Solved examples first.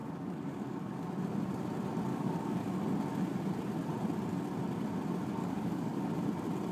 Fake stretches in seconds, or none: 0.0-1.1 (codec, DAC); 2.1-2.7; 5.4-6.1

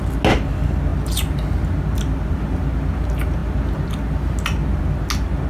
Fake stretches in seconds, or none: none

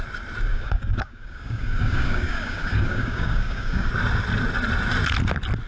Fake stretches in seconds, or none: 0.5-3.9 (codec, DAC)

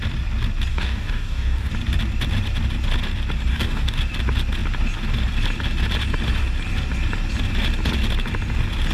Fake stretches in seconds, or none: 0.7-1.7 (codec, DAC); 3.5-4.0

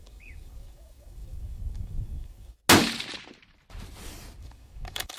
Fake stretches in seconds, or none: 0.0-2.6 (codec, DAC); 4.4-5.2

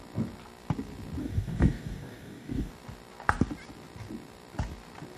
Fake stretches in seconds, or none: 1.2-2.7 (codec, DAC)

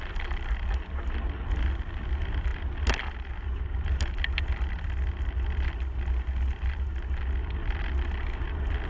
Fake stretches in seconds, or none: none